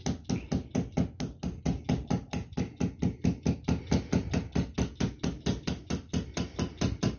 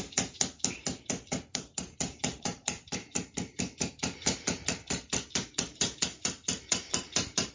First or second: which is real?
first